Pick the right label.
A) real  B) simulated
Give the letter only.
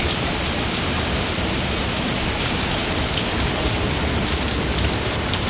B